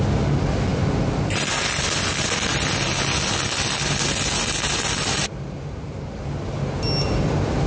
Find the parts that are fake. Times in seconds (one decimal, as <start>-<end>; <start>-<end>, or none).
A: none